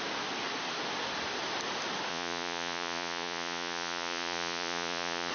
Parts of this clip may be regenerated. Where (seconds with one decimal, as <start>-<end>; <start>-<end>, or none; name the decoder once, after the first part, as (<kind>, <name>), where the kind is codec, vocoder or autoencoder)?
2.1-5.3 (vocoder, Vocos)